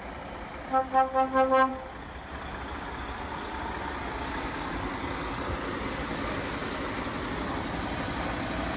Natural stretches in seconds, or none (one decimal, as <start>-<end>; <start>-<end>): 0.0-8.8